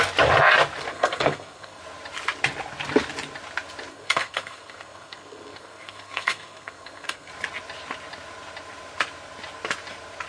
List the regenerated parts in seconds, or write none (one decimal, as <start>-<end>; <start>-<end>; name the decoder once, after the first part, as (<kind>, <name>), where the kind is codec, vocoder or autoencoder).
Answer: 0.9-1.8 (codec, SNAC); 3.9-7.3